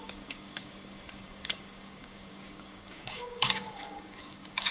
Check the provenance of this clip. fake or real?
fake